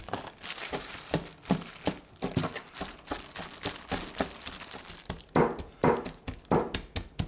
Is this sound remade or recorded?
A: recorded